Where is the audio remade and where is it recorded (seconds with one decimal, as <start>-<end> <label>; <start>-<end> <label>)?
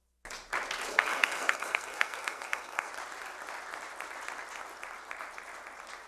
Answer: 0.0-0.9 recorded; 0.9-2.9 remade; 2.9-6.1 recorded